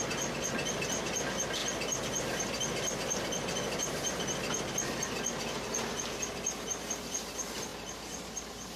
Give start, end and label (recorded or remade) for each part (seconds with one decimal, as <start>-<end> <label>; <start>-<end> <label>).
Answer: 0.0-8.8 recorded